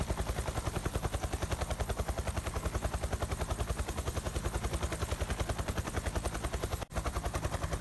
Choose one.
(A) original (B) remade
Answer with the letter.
B